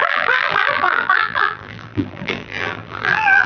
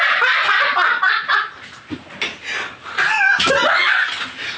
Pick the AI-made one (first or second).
first